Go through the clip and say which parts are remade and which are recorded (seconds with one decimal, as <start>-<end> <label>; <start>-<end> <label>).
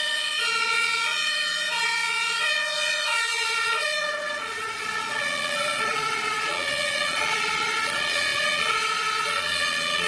0.0-10.1 remade